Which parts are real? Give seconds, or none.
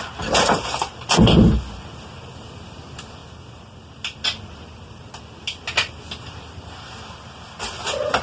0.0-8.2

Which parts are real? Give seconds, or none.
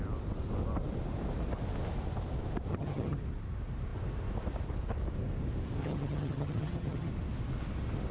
0.0-2.7; 3.2-5.8; 7.1-8.1